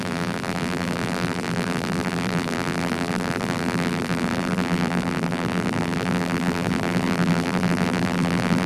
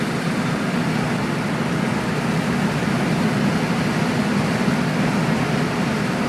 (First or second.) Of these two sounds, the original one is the second